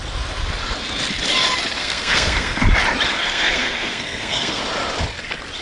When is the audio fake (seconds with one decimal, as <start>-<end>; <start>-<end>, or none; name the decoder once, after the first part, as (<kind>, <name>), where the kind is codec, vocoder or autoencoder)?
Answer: 1.8-2.6 (codec, SNAC); 3.1-4.6

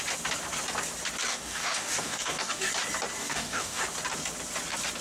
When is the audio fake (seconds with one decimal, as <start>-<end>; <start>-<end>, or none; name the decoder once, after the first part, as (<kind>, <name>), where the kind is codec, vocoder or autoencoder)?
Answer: 1.3-2.7 (codec, DAC); 3.2-3.8

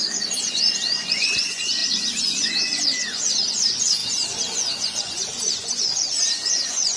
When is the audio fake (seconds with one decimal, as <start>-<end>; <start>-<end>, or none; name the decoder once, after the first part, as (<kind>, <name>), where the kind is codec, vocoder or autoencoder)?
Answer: 0.0-7.0 (vocoder, Vocos)